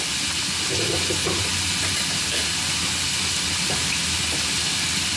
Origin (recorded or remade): recorded